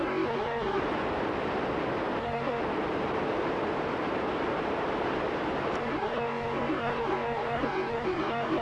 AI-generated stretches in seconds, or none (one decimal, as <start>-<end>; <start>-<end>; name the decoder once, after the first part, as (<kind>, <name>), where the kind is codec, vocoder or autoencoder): 0.0-0.8 (codec, SNAC); 2.2-2.6; 5.8-8.6